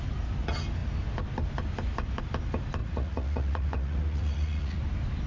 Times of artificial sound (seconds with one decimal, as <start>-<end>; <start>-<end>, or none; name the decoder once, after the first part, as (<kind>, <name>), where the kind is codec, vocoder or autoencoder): 2.8-4.8 (vocoder, Vocos)